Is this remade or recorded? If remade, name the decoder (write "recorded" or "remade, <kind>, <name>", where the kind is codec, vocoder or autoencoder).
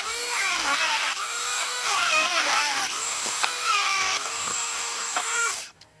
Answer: remade, codec, DAC